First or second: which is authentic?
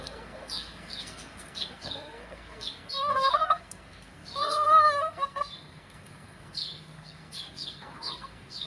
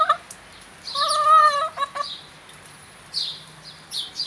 second